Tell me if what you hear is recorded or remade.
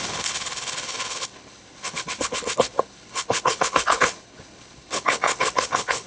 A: remade